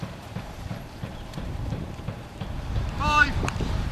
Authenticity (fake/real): fake